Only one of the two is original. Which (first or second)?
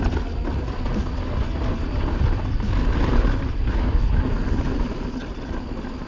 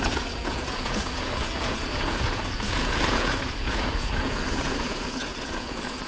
first